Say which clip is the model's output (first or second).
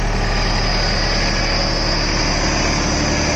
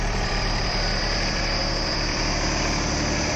second